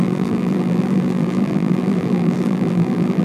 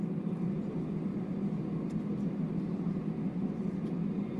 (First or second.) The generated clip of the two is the first